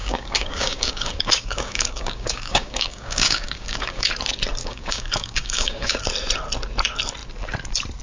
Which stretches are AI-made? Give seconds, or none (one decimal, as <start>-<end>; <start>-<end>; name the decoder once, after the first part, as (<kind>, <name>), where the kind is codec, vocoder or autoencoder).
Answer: 0.0-4.1 (codec, DAC); 4.6-6.0

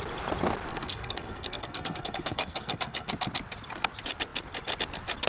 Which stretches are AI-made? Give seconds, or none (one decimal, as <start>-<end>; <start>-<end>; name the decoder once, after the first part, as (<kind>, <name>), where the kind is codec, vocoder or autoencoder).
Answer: 0.7-3.1 (codec, SNAC)

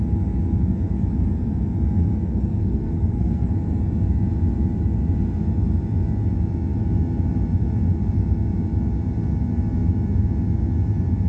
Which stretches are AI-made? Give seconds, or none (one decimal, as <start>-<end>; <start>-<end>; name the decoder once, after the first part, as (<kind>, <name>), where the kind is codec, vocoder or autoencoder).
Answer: 2.6-3.5 (codec, SNAC)

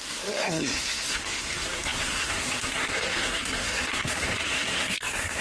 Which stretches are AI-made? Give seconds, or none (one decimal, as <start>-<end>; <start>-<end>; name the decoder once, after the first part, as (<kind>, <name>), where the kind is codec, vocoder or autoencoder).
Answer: 0.0-5.4 (codec, SNAC)

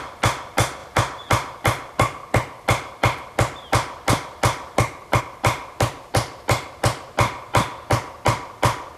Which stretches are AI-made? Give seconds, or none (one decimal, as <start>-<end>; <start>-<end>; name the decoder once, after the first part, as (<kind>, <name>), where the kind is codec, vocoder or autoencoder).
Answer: none

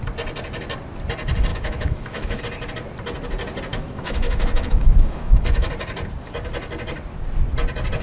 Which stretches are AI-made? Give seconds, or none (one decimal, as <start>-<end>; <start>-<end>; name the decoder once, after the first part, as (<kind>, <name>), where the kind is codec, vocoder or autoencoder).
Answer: 1.5-2.4 (autoencoder, DAC-VAE); 3.7-5.7

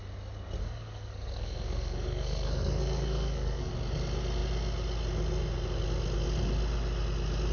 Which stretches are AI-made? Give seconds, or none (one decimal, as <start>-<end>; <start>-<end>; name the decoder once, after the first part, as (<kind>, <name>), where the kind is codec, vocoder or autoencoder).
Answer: 0.6-3.7 (codec, SNAC)